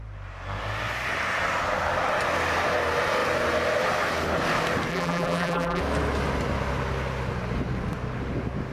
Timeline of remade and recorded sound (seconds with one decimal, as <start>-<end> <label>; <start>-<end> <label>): 0.0-4.9 recorded; 4.9-5.8 remade; 5.8-8.7 recorded